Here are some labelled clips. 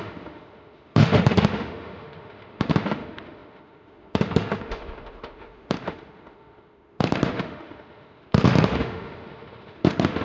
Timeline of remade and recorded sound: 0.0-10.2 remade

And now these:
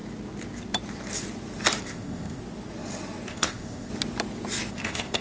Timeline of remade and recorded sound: 0.0-1.8 recorded; 1.8-2.4 remade; 2.4-3.3 recorded; 3.3-3.9 remade; 3.9-4.7 recorded; 4.7-5.2 remade